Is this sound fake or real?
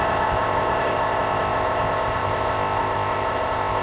fake